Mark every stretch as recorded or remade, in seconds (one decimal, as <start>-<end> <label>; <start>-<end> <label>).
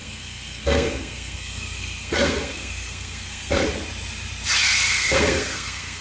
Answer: 0.0-3.6 remade; 3.6-4.6 recorded; 4.6-6.0 remade